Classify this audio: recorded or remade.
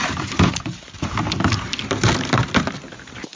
recorded